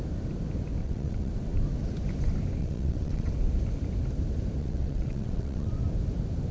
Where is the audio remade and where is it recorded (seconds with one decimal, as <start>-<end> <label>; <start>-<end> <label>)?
0.0-0.8 recorded; 0.8-1.3 remade; 1.3-2.6 recorded; 2.6-3.3 remade; 3.3-4.6 recorded; 4.6-5.8 remade; 5.8-6.5 recorded